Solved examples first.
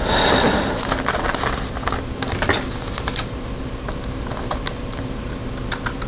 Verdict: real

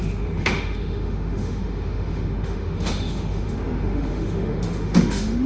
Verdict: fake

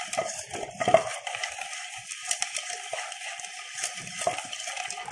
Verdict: real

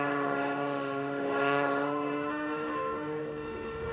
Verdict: fake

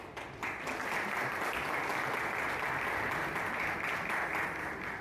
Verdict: real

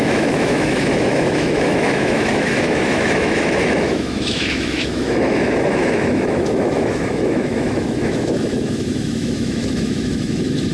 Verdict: fake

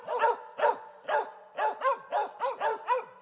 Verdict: real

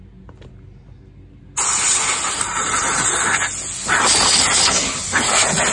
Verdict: real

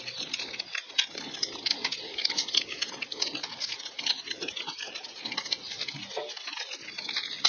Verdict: real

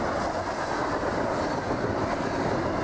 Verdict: real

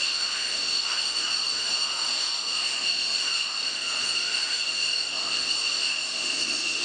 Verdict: fake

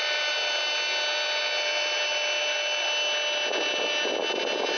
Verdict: real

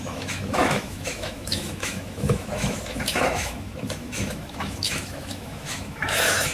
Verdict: fake